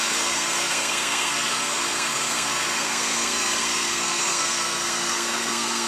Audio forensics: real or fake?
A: fake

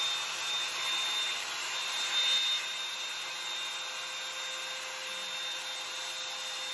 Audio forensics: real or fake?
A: real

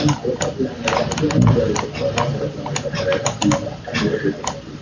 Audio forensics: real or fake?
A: real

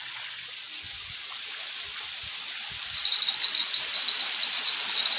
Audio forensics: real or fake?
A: real